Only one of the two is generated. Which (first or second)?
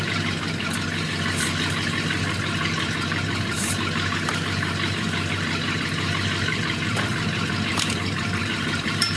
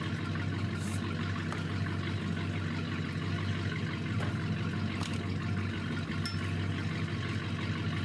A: first